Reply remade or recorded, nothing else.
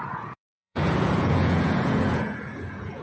remade